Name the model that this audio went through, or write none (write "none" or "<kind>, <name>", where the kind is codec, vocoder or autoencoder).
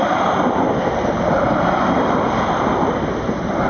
vocoder, BigVGAN v2